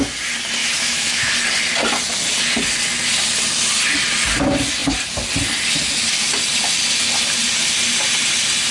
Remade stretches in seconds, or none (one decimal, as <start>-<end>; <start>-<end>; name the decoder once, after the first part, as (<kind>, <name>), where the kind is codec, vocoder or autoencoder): 0.6-1.3 (autoencoder, DAC-VAE)